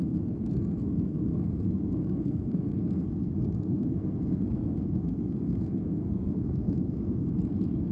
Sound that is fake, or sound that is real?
fake